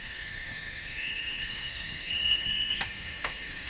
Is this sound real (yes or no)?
no